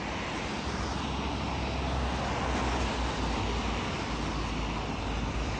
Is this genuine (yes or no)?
yes